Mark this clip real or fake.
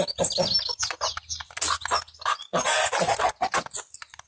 real